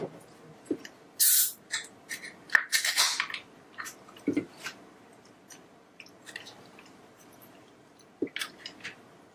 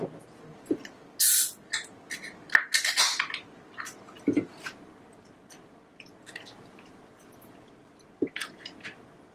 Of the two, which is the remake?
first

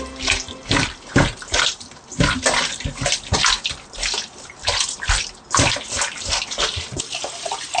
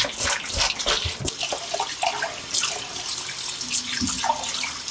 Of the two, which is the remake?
first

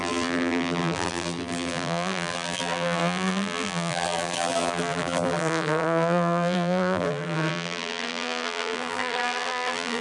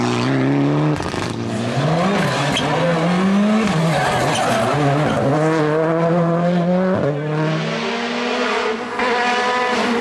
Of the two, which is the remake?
first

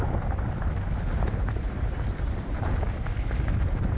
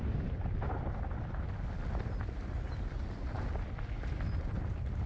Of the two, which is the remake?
first